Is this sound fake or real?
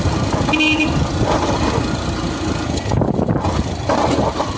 real